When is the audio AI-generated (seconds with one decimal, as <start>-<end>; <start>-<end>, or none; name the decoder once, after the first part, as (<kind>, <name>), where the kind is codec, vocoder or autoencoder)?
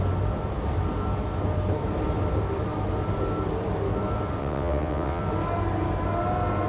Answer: 4.4-5.2 (vocoder, WaveNeXt)